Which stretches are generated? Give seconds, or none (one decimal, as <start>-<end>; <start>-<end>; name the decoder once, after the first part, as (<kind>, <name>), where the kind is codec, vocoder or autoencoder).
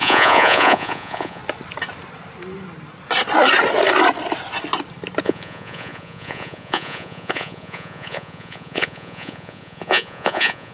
0.0-1.4 (vocoder, Vocos); 5.2-10.7